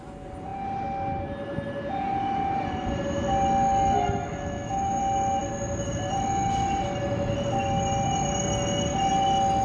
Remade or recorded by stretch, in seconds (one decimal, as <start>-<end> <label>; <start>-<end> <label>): 0.0-4.3 recorded; 4.3-5.0 remade; 5.0-9.6 recorded